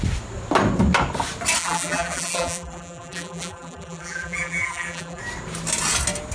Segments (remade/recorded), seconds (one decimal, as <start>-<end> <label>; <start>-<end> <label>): 0.0-1.6 recorded; 1.6-5.2 remade; 5.2-6.3 recorded